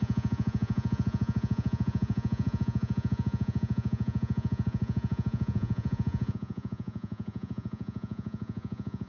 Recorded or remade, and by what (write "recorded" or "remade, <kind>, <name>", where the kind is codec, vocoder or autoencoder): remade, vocoder, Vocos